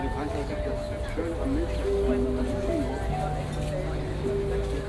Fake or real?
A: real